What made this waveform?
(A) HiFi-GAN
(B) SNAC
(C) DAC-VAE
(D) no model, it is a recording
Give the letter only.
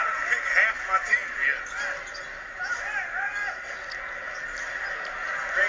D